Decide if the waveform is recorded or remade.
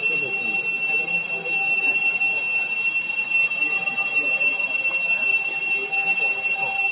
recorded